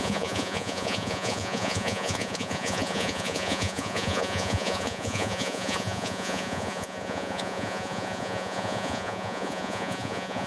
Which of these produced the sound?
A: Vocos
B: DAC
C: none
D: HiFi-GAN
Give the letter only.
A